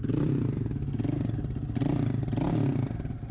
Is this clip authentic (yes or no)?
yes